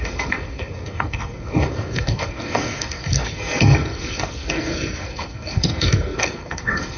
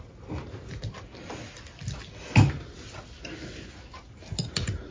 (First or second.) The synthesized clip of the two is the first